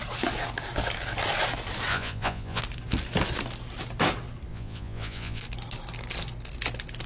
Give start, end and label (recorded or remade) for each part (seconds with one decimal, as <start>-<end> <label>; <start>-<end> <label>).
0.0-1.9 recorded; 1.9-2.6 remade; 2.6-4.5 recorded; 4.5-5.4 remade; 5.4-7.1 recorded